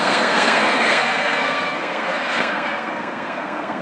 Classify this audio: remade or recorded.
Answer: remade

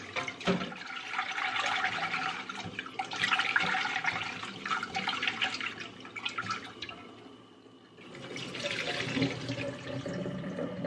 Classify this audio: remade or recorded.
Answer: recorded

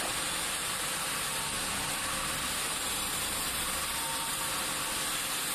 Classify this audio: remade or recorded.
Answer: recorded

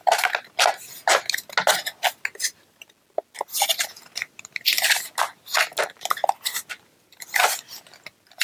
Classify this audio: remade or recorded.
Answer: recorded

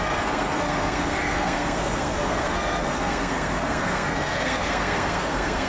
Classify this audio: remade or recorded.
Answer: remade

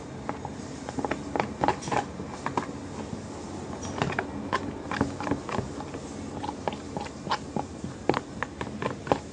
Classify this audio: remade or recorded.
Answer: recorded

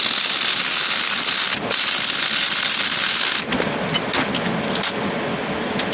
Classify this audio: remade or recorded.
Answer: recorded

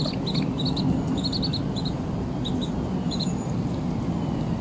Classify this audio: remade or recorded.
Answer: recorded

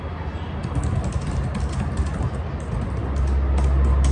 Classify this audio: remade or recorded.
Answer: recorded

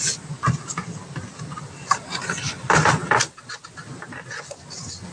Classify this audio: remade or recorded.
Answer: recorded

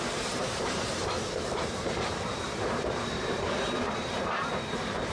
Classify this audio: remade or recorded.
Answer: remade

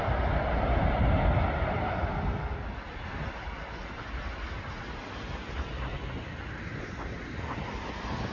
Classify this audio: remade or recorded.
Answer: recorded